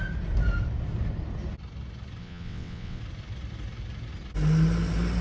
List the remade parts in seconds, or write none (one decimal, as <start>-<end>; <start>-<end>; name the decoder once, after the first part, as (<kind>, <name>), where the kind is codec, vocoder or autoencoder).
2.2-3.0 (vocoder, WaveNeXt)

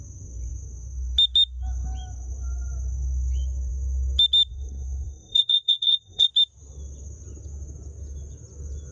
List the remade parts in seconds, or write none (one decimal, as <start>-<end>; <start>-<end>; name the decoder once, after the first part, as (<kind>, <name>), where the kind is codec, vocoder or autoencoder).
4.5-6.3 (codec, SNAC)

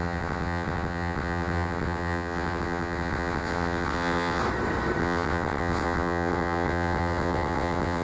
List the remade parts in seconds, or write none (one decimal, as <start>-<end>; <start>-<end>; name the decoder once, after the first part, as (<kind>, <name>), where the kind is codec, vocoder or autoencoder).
0.0-4.4 (vocoder, WaveNeXt); 5.0-8.0

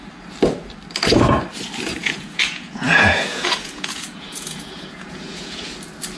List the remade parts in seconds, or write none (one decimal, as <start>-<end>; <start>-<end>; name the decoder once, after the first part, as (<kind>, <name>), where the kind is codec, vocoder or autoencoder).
2.0-5.7 (vocoder, Vocos)

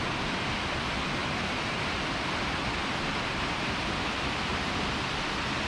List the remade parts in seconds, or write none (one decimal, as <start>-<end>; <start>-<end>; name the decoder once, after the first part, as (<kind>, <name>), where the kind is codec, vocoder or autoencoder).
none

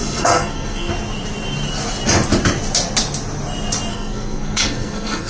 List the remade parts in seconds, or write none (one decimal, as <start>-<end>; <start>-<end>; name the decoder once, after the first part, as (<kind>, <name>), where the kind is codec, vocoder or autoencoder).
0.0-0.9 (codec, SNAC); 3.9-5.3

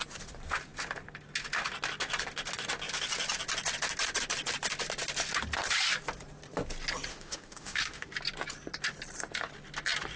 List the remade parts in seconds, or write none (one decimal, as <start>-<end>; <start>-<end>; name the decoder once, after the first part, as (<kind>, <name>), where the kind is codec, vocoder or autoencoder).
7.1-8.1 (autoencoder, DAC-VAE)